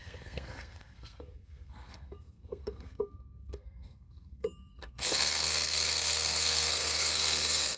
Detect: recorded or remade remade